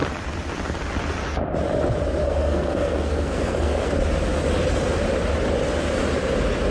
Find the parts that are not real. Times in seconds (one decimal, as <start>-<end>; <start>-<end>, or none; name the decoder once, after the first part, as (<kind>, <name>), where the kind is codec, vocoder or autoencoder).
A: 2.2-3.9 (codec, SNAC)